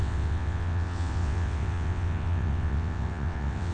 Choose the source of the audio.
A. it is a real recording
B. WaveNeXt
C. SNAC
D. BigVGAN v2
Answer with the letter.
B